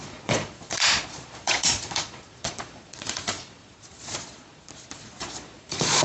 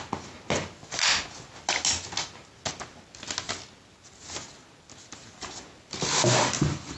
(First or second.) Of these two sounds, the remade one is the first